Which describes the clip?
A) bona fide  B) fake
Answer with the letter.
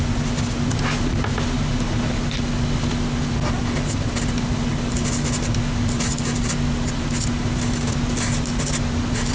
A